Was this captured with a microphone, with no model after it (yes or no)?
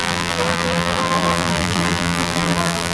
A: no